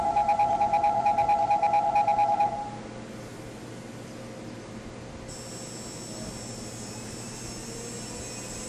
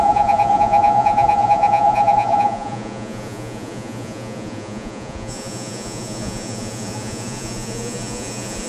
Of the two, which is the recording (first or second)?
first